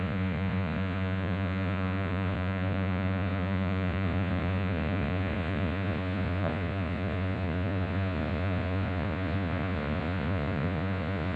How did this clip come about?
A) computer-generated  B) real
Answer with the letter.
A